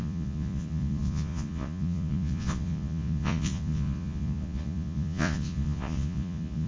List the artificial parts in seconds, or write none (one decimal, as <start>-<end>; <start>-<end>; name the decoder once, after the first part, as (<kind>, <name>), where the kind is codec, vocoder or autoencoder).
0.0-6.7 (vocoder, Vocos)